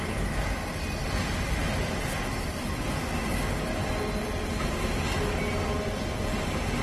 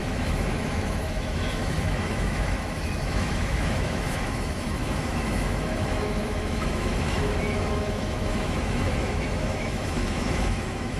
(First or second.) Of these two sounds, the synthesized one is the second